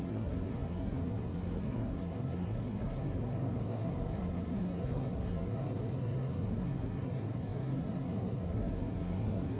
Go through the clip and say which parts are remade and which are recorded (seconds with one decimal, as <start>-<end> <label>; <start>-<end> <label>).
0.0-9.6 remade